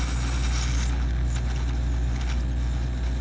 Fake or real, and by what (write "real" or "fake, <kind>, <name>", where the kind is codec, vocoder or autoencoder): real